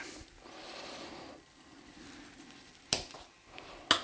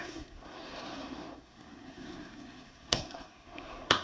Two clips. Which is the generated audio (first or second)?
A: second